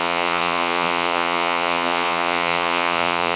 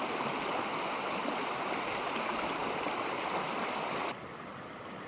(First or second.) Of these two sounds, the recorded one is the second